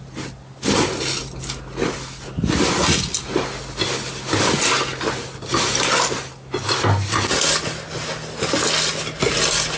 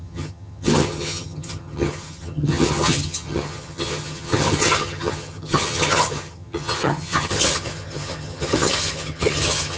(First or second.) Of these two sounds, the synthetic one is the second